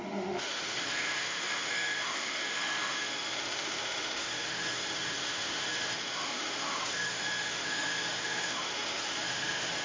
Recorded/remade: remade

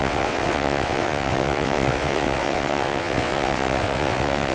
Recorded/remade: remade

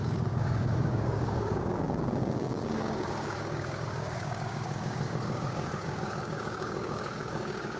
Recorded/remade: remade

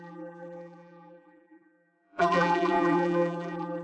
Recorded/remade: remade